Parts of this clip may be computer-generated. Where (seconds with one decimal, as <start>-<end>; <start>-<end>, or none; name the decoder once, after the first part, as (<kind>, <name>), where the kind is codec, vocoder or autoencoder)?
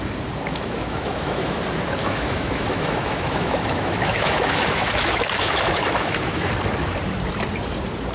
0.5-1.6 (autoencoder, DAC-VAE); 2.0-6.5